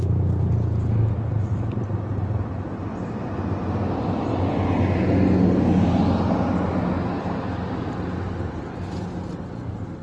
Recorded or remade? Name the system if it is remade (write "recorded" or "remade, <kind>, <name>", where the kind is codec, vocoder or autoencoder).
recorded